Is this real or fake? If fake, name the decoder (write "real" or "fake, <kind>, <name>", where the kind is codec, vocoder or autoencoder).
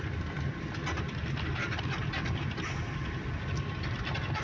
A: real